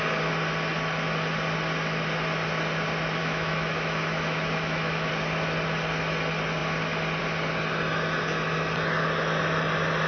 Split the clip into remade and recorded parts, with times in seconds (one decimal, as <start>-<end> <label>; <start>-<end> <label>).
0.0-3.2 recorded; 3.2-5.1 remade; 5.1-10.1 recorded